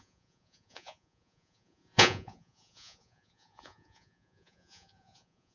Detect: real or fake fake